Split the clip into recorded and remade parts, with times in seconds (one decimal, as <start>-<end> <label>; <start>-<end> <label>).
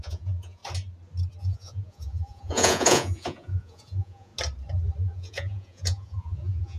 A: 0.0-0.6 remade; 0.6-1.4 recorded; 1.4-4.3 remade; 4.3-5.0 recorded; 5.0-6.8 remade